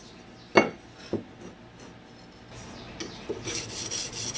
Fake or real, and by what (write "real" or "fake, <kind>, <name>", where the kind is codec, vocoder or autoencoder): real